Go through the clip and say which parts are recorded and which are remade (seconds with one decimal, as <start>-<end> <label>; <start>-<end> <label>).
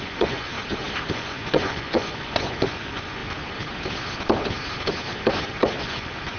0.0-0.5 remade; 0.5-1.1 recorded; 1.1-3.2 remade; 3.2-5.8 recorded; 5.8-6.4 remade